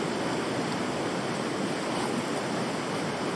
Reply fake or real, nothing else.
real